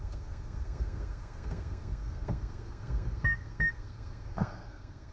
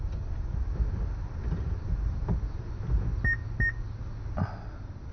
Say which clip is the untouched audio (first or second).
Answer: second